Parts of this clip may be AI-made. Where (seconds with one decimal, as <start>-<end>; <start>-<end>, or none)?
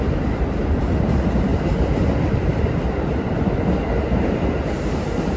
none